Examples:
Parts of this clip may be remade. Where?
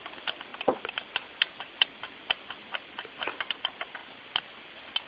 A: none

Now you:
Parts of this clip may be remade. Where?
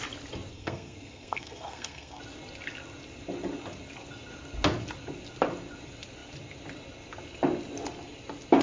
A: 0.5-2.2 (codec, SNAC)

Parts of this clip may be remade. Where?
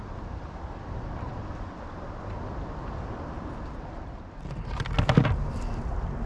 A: none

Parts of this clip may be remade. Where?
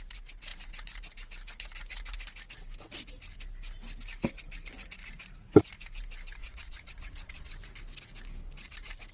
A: 6.4-7.5 (vocoder, Vocos)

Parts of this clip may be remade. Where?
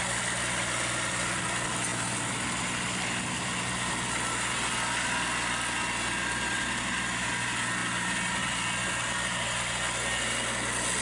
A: 7.8-8.4 (vocoder, BigVGAN v2)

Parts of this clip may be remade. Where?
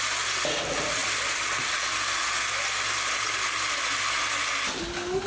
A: none